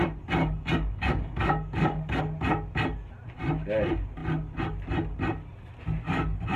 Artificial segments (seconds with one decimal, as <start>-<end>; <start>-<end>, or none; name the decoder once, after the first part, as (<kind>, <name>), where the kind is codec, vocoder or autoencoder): 0.4-2.2 (codec, DAC)